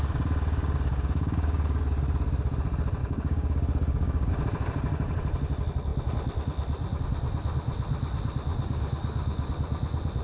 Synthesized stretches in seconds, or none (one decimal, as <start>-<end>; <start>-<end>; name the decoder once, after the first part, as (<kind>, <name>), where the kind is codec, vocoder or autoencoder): 0.9-1.8 (codec, DAC); 3.0-4.3; 8.5-9.5